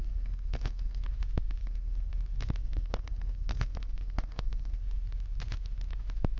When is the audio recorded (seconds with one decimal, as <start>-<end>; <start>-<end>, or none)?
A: 1.0-1.6; 2.1-2.6; 4.8-6.4